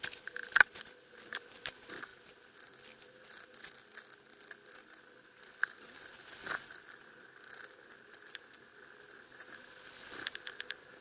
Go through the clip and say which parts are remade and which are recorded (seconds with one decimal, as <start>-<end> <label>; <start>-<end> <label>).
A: 0.0-11.0 recorded